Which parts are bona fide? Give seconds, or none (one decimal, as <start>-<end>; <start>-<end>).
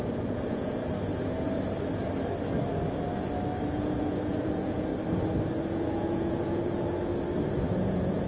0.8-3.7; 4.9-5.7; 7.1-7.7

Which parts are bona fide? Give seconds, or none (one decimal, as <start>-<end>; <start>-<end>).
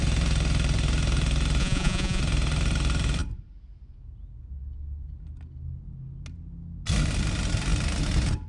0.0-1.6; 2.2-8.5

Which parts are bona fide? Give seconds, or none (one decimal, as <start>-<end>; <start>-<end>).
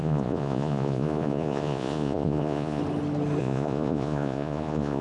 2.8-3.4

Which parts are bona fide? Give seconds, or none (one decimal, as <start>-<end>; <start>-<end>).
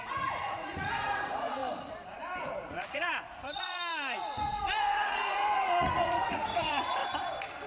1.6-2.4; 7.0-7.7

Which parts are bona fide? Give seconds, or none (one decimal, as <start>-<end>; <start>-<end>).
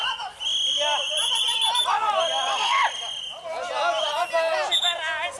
0.0-5.4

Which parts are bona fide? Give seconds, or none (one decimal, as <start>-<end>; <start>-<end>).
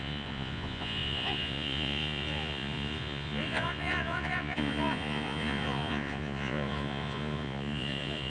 none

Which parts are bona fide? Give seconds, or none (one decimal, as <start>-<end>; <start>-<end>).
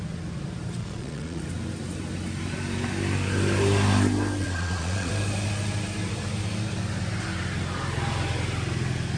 0.0-0.8; 1.4-4.4; 5.1-9.2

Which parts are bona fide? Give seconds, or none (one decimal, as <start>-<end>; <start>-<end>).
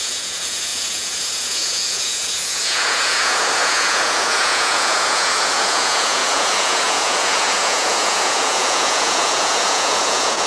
none